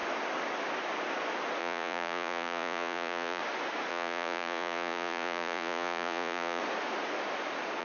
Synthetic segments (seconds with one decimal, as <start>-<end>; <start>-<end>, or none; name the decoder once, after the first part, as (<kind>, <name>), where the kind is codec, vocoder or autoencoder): 1.6-3.4 (vocoder, Vocos); 3.9-6.6